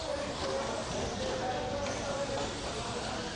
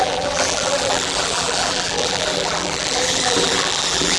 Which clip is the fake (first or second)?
second